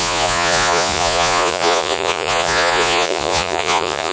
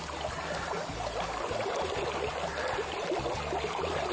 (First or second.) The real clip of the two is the second